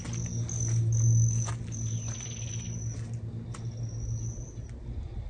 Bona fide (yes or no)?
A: yes